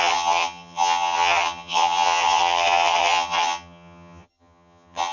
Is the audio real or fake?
fake